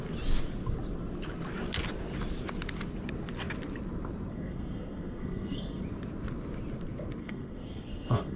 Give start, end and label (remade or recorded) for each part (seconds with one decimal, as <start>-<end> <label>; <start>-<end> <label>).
0.0-4.3 recorded; 4.3-5.8 remade; 5.8-7.2 recorded; 7.2-8.4 remade